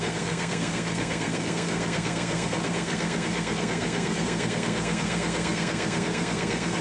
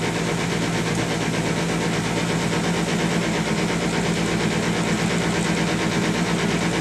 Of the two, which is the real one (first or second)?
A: second